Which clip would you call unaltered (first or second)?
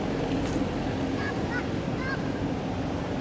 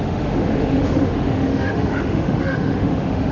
first